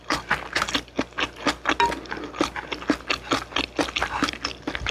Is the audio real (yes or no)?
yes